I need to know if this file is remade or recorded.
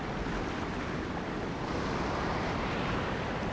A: recorded